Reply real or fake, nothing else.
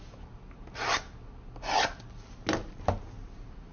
real